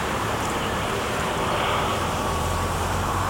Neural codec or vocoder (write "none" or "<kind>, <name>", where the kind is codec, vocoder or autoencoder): vocoder, BigVGAN v2